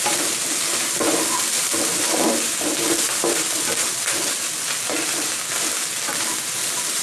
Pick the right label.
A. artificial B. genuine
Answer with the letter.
B